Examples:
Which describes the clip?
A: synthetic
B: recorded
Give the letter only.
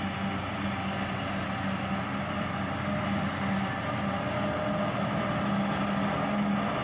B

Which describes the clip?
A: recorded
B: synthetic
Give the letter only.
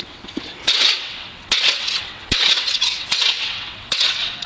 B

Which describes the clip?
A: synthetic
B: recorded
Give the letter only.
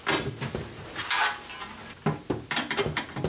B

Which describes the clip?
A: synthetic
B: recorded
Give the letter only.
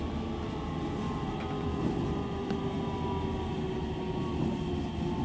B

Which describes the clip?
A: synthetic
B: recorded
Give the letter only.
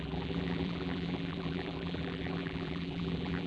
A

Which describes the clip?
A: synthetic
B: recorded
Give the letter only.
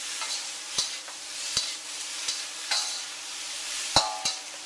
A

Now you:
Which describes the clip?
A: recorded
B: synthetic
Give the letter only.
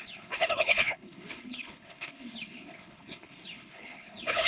B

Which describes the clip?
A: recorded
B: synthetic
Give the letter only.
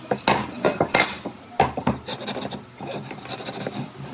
A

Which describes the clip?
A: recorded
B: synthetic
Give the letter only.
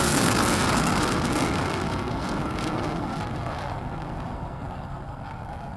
B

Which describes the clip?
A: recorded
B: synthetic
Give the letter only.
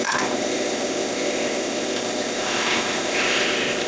B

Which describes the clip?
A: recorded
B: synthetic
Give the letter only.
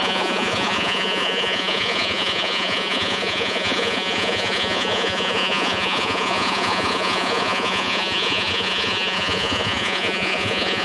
B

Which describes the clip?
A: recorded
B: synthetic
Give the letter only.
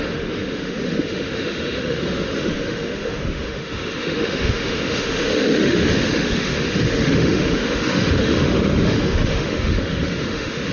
B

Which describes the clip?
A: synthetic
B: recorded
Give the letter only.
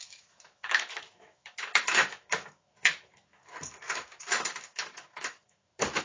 A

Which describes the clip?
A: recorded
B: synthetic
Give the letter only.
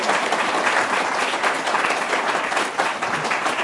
B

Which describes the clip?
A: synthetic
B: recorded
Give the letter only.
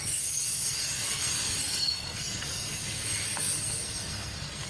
A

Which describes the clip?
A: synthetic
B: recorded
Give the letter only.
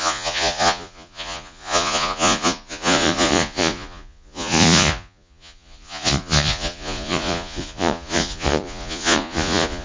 A